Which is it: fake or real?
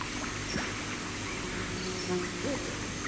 real